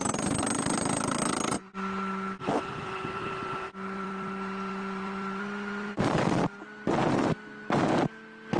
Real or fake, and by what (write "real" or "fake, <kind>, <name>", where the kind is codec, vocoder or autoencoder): real